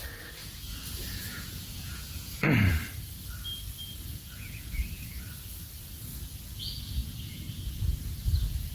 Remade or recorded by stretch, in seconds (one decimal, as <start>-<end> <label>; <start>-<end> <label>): 0.0-0.4 recorded; 0.4-2.7 remade; 2.7-4.1 recorded; 4.1-5.3 remade; 5.3-7.0 recorded; 7.0-7.7 remade; 7.7-8.7 recorded